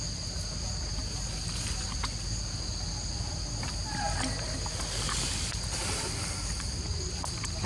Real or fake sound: fake